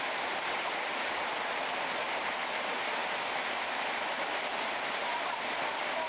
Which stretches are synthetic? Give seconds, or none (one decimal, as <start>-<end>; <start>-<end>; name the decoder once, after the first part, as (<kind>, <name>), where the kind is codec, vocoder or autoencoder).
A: none